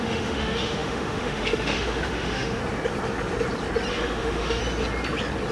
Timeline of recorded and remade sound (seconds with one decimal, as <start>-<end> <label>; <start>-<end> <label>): 0.0-2.6 remade; 2.6-3.9 recorded; 3.9-4.6 remade; 4.6-5.5 recorded